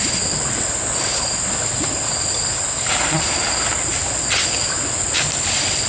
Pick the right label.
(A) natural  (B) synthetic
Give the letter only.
A